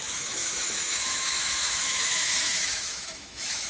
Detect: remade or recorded remade